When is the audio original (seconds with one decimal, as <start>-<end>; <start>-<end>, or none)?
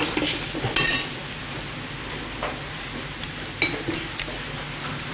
0.0-5.1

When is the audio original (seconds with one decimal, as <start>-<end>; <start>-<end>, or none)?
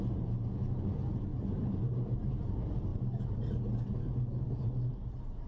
0.0-1.3; 2.3-5.5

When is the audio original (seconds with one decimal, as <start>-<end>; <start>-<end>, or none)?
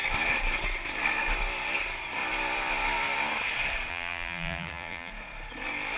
0.0-3.9; 5.1-6.0